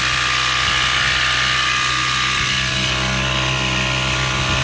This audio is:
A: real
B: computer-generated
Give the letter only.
A